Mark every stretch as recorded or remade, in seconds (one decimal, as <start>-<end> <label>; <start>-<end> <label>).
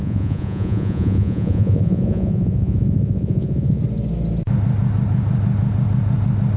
0.0-3.8 remade; 3.8-6.6 recorded